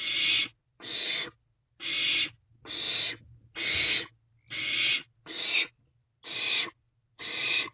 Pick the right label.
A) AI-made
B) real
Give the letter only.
B